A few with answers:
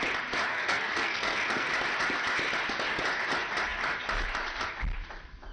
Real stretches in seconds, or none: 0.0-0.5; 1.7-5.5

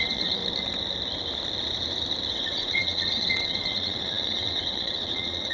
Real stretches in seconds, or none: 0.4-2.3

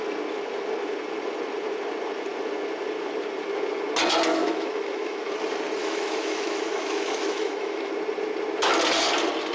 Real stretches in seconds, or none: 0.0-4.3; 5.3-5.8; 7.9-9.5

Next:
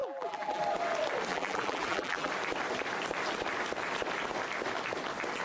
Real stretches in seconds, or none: 0.6-1.3; 2.3-5.4

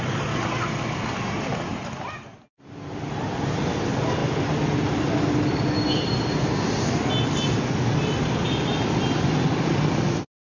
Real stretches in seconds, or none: 0.0-10.6

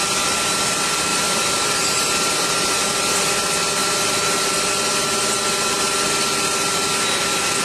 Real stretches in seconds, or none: 0.0-1.1; 3.3-3.8; 4.5-7.6

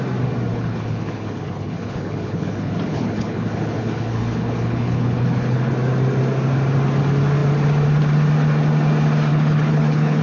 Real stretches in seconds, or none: 0.0-0.5; 5.7-9.3